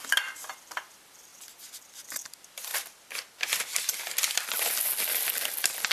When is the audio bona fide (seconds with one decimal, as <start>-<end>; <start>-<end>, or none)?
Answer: 4.9-5.9